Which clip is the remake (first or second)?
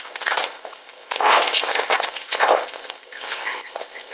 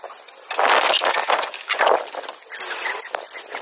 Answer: first